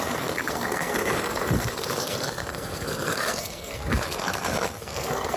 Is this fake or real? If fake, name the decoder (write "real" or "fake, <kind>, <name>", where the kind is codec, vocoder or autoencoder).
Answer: fake, codec, SNAC